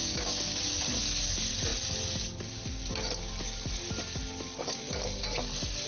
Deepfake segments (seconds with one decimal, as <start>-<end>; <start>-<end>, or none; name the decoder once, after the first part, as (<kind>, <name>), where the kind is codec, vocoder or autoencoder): 0.0-0.6 (codec, DAC)